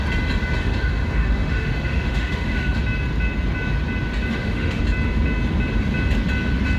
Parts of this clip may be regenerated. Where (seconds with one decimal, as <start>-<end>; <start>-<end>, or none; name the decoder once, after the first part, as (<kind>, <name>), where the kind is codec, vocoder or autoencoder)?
0.6-2.8 (autoencoder, DAC-VAE); 4.3-4.8